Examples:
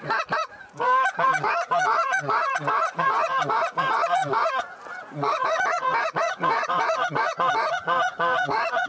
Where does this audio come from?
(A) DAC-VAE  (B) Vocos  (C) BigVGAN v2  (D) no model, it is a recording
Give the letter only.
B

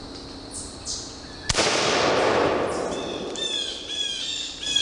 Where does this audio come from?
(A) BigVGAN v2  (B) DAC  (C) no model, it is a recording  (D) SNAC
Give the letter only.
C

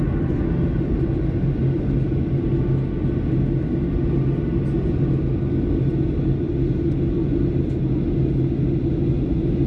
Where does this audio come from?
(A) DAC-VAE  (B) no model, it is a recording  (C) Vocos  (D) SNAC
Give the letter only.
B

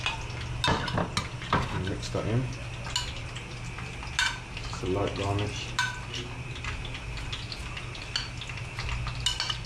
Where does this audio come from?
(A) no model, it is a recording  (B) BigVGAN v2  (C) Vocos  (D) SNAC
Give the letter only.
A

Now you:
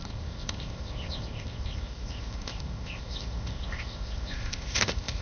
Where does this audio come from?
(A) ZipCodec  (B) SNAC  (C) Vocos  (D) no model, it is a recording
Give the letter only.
A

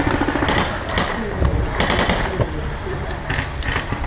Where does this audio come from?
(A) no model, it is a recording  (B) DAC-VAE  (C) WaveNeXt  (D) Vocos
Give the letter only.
A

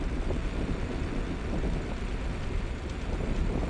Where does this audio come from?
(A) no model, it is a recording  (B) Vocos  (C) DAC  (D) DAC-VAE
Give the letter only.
A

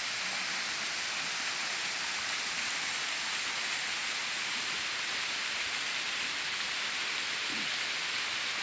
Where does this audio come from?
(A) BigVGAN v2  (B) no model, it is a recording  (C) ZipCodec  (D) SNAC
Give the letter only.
B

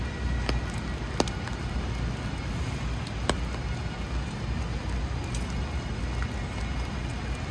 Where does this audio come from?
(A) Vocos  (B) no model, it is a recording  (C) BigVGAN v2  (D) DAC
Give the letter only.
B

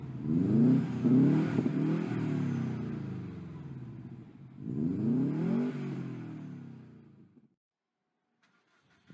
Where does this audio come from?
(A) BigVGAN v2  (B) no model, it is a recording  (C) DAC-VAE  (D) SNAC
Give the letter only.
B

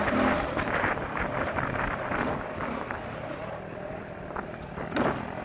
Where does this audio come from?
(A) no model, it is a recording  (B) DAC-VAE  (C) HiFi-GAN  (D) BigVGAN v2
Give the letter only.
D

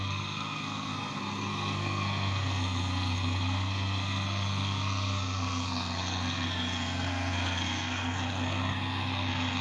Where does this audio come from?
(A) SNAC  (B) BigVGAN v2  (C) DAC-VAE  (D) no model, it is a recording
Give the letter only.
A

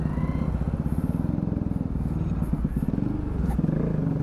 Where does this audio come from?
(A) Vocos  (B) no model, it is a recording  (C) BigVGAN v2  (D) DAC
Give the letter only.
B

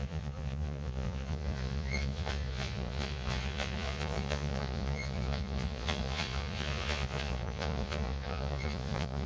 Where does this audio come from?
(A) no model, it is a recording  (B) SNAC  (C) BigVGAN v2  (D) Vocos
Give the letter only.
D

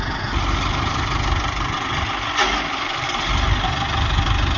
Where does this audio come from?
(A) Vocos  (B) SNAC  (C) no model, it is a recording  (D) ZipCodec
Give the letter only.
C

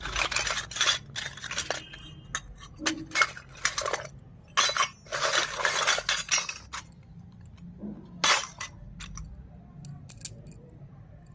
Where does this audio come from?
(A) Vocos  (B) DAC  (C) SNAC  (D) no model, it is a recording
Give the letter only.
D